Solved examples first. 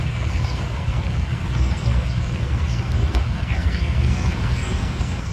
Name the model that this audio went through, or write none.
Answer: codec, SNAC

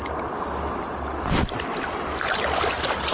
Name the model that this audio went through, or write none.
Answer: vocoder, BigVGAN v2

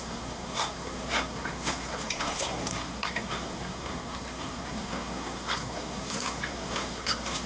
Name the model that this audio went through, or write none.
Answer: codec, SNAC